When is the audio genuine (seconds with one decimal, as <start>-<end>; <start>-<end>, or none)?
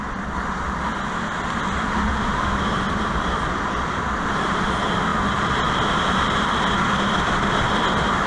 0.0-8.3